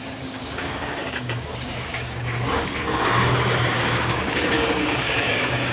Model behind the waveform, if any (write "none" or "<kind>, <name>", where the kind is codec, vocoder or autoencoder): codec, DAC